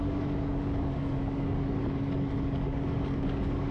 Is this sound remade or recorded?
remade